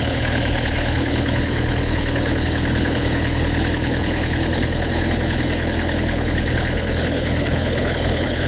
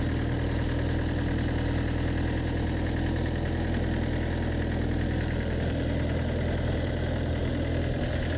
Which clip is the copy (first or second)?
first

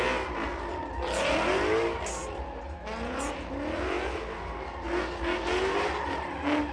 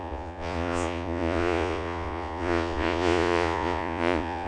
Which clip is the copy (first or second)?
second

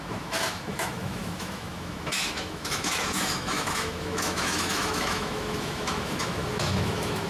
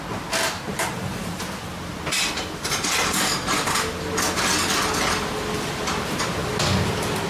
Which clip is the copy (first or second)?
first